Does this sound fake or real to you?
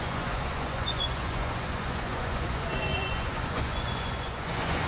fake